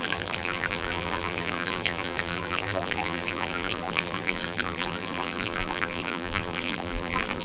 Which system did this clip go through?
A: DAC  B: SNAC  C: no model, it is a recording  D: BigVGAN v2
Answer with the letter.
D